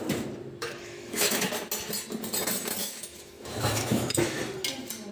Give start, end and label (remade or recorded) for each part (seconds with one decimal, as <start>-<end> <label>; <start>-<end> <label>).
0.0-0.6 recorded; 0.6-1.5 remade; 1.5-2.8 recorded; 2.8-4.4 remade; 4.4-5.1 recorded